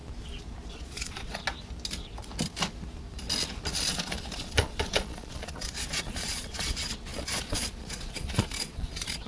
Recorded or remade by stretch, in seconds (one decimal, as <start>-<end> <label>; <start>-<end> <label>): 0.0-0.7 recorded; 0.7-1.4 remade; 1.4-3.9 recorded; 3.9-9.3 remade